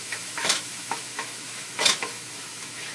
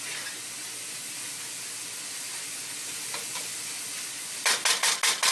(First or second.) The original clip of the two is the second